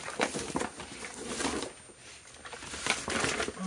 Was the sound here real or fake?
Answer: real